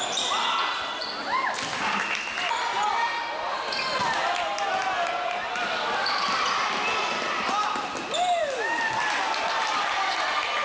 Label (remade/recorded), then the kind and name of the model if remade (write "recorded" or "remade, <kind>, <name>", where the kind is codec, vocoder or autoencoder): recorded